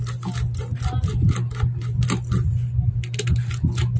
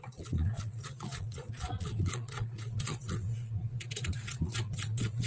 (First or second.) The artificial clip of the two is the second